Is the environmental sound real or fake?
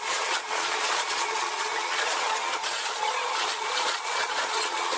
fake